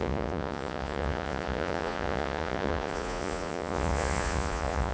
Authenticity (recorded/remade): remade